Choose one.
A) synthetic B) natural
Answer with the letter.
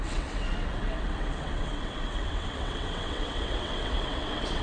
A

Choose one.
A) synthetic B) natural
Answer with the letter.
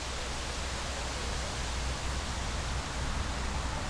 B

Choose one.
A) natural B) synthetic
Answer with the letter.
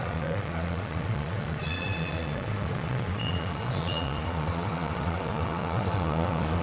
B